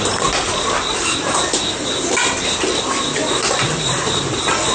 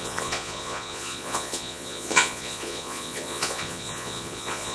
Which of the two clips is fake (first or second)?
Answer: second